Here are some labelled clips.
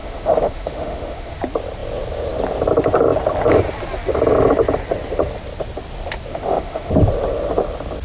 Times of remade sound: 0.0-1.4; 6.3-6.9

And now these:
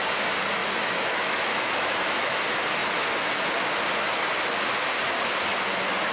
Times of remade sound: 0.6-2.4

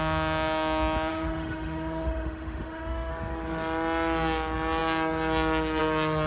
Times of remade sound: 1.1-3.1

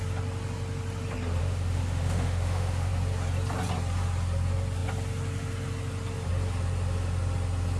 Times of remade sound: 1.4-2.9

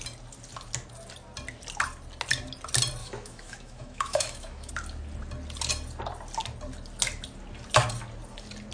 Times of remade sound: 3.0-4.7

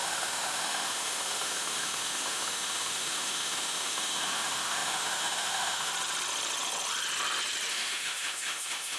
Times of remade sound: 0.0-5.9; 7.7-9.0